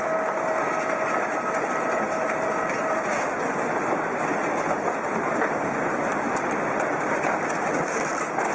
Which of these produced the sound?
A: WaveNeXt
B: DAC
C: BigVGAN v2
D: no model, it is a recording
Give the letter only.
D